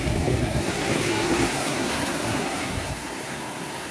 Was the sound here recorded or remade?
remade